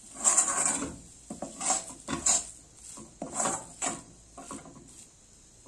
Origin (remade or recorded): recorded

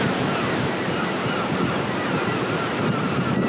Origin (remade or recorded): recorded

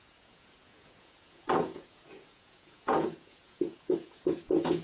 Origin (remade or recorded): remade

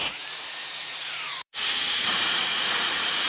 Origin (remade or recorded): remade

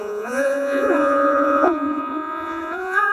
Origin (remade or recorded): remade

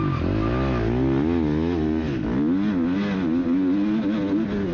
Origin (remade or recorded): recorded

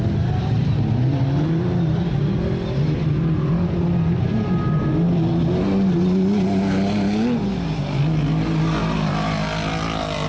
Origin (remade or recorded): recorded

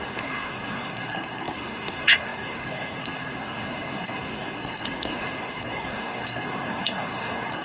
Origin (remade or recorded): remade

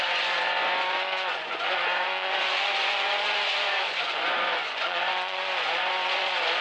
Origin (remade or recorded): remade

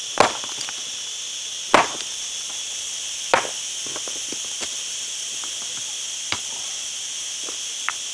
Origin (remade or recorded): recorded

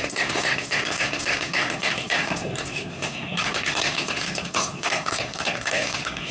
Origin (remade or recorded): remade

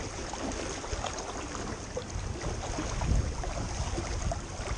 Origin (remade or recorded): recorded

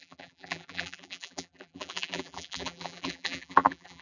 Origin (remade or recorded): remade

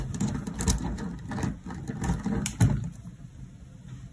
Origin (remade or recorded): recorded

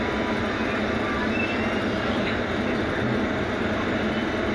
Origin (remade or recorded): recorded